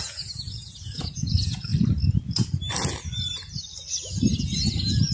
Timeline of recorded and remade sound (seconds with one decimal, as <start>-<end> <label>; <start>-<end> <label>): 0.0-1.7 remade; 1.7-4.4 recorded; 4.4-5.1 remade